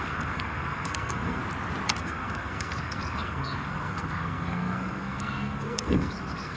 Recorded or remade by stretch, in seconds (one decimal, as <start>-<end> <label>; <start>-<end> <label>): 0.0-1.4 remade; 1.4-2.0 recorded; 2.0-6.6 remade